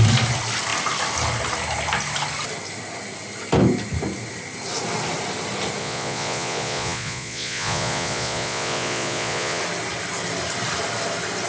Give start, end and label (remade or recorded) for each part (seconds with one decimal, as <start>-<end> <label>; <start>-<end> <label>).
0.0-5.8 recorded; 5.8-9.6 remade; 9.6-11.5 recorded